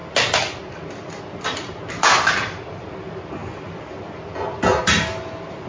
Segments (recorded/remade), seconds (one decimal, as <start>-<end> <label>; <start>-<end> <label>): 0.0-5.7 recorded